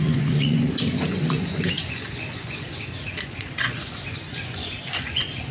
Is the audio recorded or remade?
remade